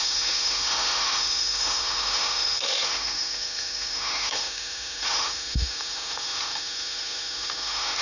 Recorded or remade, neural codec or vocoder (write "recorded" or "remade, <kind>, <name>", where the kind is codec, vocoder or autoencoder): remade, autoencoder, DAC-VAE